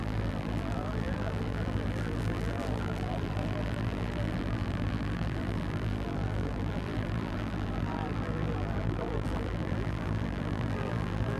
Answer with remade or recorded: remade